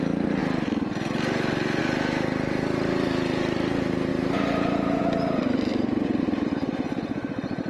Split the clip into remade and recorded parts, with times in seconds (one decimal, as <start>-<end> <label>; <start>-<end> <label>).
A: 0.0-4.1 recorded; 4.1-5.0 remade; 5.0-7.7 recorded